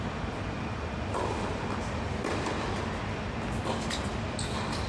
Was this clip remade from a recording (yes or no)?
no